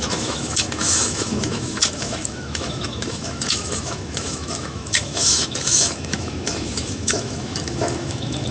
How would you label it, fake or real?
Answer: fake